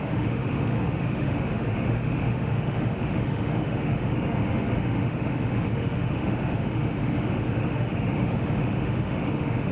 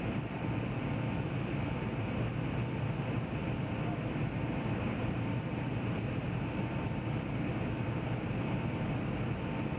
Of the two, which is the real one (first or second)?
second